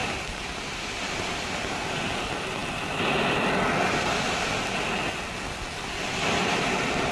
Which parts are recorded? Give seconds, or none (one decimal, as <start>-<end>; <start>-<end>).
1.9-7.1